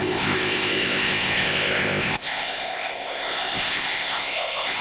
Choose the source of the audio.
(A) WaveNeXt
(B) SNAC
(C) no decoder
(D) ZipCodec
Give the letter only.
D